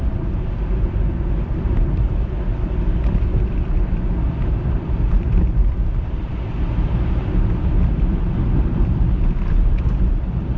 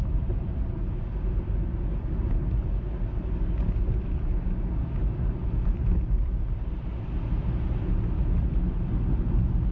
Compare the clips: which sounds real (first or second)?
second